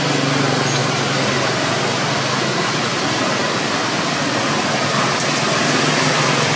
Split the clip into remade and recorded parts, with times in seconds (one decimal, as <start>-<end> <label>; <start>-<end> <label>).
0.0-0.8 recorded; 0.8-2.2 remade; 2.2-6.6 recorded